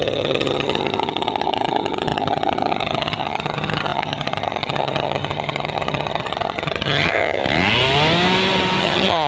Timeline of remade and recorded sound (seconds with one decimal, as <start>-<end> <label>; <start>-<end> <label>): 0.0-7.4 remade; 7.4-8.8 recorded; 8.8-9.3 remade

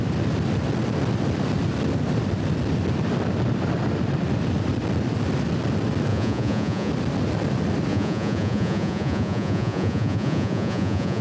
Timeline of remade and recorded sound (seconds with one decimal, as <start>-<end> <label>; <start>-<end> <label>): 0.0-6.1 recorded; 6.1-6.9 remade; 6.9-7.9 recorded; 7.9-11.2 remade